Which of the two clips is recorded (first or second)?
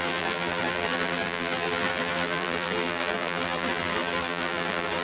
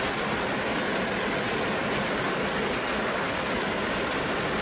second